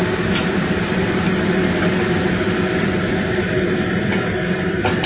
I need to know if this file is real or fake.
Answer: real